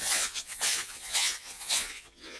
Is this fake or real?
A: fake